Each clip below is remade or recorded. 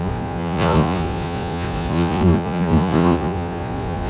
remade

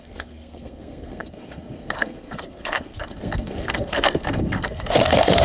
remade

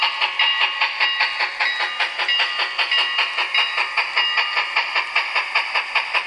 recorded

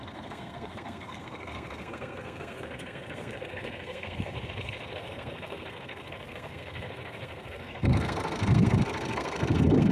remade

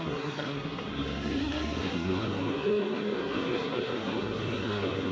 remade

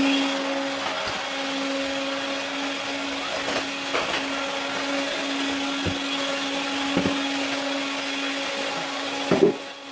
recorded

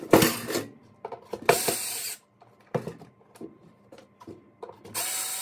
recorded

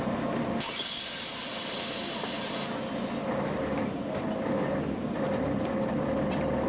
recorded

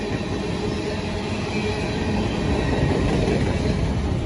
recorded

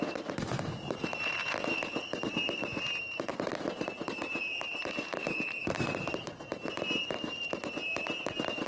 remade